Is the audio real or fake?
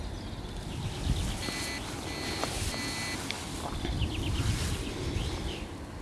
real